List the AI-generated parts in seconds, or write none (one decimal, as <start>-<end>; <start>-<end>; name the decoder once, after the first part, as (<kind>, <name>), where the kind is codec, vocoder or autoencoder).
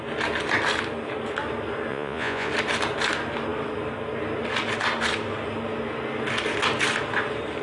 1.9-2.5 (vocoder, Vocos)